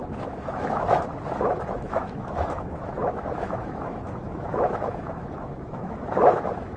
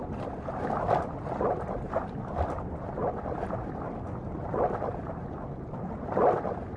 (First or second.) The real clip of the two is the second